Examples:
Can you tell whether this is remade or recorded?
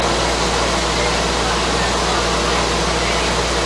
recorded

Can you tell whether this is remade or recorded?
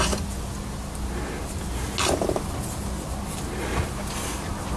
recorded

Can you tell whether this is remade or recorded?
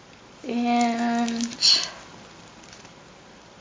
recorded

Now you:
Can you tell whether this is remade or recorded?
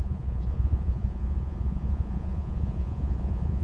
remade